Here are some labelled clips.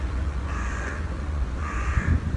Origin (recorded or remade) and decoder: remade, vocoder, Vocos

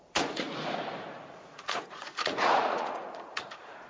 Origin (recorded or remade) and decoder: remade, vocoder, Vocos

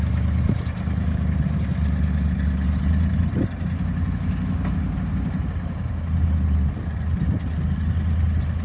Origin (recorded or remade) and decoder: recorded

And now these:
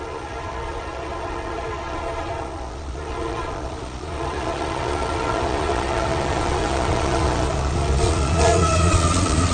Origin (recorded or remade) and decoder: remade, vocoder, Vocos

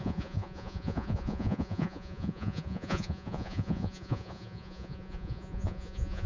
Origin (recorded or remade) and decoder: remade, vocoder, Vocos